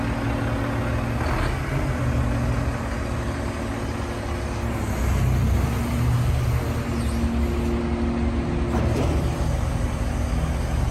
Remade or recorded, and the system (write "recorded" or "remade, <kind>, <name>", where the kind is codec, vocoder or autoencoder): recorded